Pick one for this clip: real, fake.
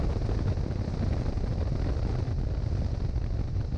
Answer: real